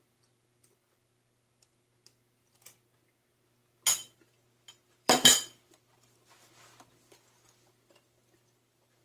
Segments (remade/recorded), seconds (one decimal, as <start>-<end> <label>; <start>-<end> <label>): 0.0-1.1 remade; 1.1-4.8 recorded; 4.8-9.0 remade